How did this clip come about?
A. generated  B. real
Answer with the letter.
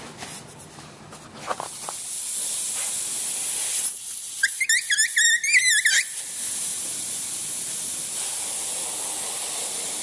B